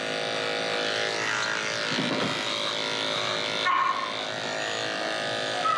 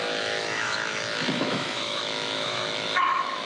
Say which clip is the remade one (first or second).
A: second